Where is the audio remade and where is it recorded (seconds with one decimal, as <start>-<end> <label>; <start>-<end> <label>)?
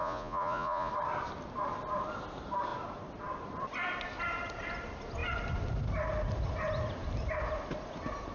0.0-0.9 remade; 0.9-8.3 recorded